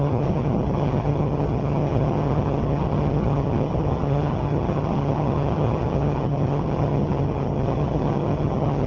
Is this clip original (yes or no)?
no